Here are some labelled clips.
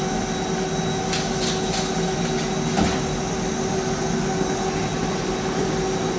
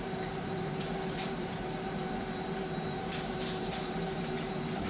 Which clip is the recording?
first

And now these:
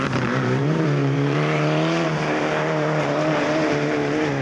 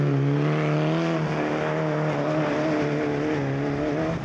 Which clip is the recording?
second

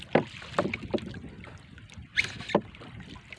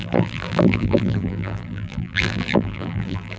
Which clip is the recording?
first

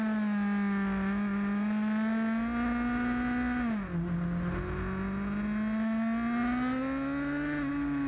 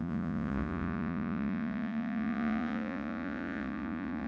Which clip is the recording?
first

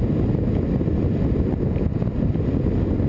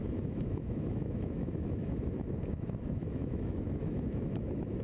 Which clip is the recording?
first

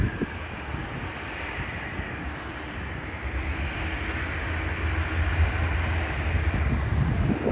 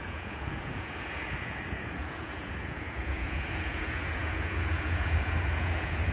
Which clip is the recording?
first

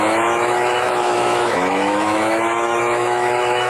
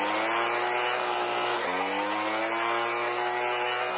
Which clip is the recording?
second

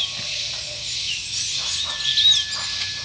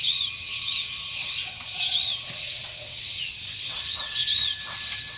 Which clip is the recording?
first